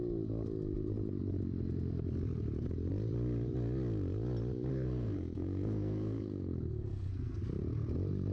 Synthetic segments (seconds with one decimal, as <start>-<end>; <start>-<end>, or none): 4.7-7.4